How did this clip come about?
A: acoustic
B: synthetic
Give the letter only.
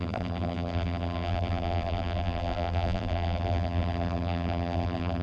B